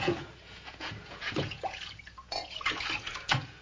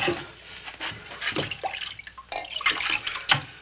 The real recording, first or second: second